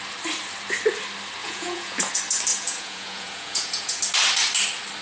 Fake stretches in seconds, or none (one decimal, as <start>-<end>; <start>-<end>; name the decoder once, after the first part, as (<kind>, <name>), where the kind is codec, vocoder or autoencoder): 1.4-2.1 (vocoder, Vocos); 2.5-4.0

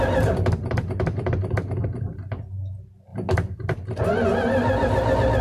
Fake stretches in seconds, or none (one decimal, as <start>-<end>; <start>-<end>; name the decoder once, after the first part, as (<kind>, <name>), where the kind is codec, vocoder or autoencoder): none

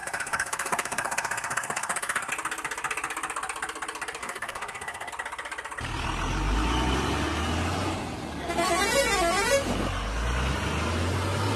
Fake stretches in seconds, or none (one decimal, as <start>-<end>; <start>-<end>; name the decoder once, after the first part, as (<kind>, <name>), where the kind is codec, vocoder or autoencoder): 0.0-2.3 (codec, SNAC); 4.2-5.1